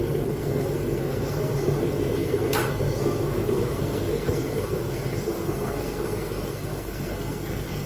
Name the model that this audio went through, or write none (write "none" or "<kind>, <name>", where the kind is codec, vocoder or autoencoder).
codec, SNAC